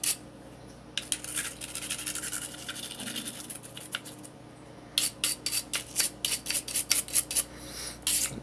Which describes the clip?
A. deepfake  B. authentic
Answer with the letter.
B